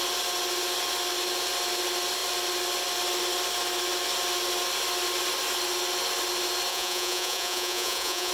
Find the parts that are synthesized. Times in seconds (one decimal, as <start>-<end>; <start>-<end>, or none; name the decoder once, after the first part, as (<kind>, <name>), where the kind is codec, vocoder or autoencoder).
6.7-8.3 (vocoder, Vocos)